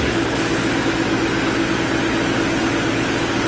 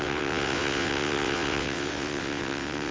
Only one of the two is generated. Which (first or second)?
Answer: second